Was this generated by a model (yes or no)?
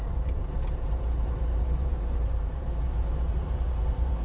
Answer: yes